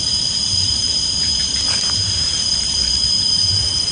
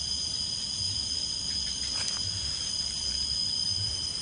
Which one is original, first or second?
second